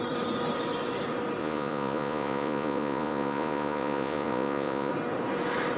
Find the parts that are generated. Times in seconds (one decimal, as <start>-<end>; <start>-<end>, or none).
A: 1.4-4.9